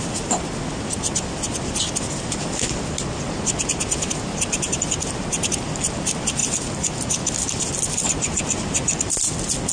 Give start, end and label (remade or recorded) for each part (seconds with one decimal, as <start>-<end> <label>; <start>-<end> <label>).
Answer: 0.0-9.7 recorded